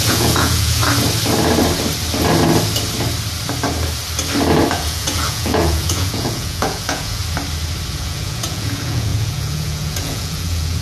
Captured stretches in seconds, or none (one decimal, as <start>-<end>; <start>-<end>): 0.8-4.7; 7.2-7.9